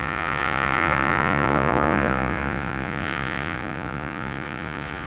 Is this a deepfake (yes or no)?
yes